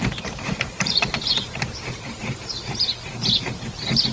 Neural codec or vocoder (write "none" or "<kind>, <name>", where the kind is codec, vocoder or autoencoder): vocoder, BigVGAN v2